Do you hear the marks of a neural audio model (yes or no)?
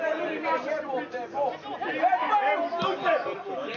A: no